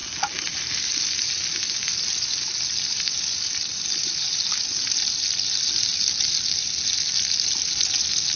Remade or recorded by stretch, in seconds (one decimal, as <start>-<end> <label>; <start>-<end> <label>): 0.0-8.4 recorded